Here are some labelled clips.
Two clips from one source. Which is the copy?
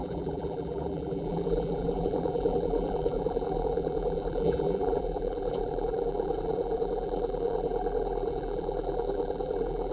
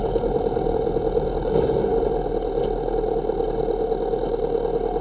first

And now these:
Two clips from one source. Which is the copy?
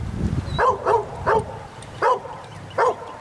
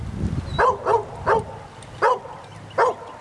first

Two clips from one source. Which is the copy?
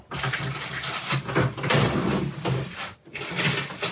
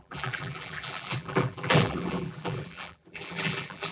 second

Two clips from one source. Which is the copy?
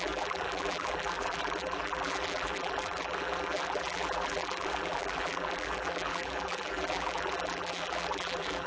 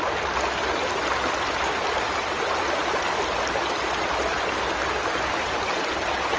first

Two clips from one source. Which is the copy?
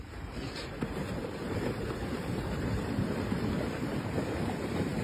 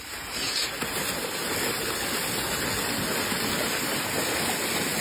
first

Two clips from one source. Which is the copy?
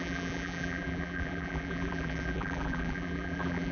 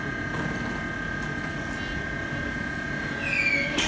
first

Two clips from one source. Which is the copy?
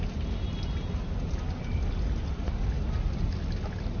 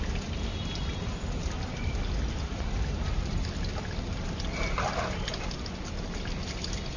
second